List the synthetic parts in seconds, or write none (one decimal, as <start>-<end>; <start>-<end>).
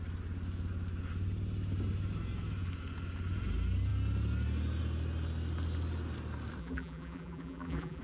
6.6-8.0